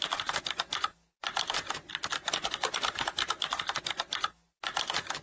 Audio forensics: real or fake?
real